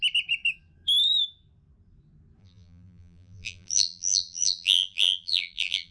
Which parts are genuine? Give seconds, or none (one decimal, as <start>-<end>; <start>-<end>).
0.0-2.4